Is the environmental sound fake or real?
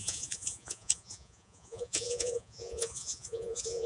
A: fake